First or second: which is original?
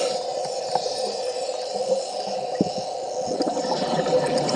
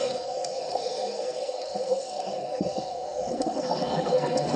first